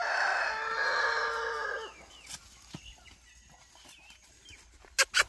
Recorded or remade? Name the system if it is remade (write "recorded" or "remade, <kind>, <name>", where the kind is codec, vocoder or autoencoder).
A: recorded